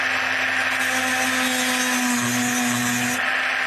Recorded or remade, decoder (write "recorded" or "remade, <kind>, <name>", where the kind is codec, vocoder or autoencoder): recorded